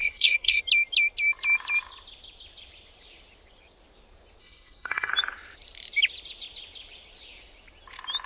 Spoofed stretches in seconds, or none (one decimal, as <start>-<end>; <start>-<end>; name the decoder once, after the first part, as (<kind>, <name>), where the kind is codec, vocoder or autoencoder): 0.0-0.6 (codec, SNAC); 4.4-5.1